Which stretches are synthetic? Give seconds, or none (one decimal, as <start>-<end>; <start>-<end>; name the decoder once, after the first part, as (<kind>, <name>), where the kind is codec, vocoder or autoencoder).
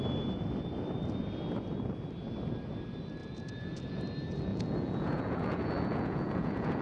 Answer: 3.2-4.0 (vocoder, Vocos); 4.5-6.8